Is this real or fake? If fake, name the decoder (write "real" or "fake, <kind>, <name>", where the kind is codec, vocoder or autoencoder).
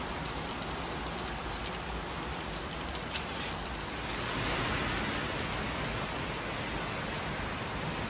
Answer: real